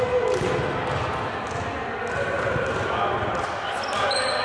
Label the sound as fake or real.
real